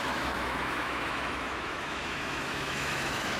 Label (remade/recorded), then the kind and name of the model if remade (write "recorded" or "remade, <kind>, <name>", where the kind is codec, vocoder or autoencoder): remade, autoencoder, DAC-VAE